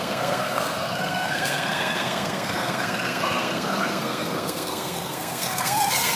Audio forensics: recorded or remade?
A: remade